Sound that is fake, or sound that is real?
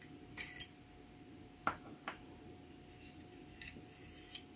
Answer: real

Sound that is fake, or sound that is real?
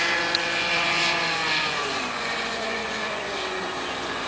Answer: fake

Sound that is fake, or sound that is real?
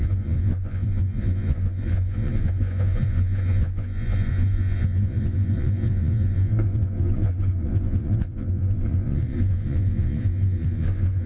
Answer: fake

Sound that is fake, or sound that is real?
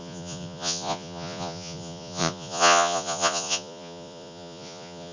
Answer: fake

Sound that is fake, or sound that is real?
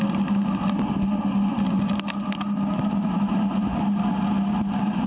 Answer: real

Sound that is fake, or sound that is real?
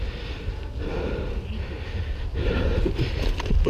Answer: real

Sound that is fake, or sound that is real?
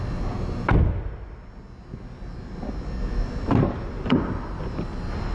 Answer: real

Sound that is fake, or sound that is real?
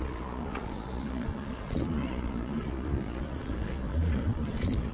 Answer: fake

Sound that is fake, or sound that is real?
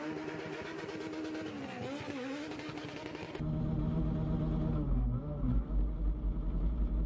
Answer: real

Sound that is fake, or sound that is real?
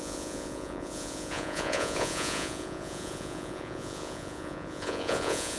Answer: fake